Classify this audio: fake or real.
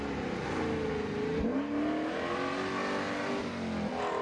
real